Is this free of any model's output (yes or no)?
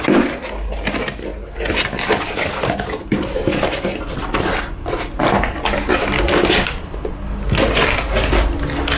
yes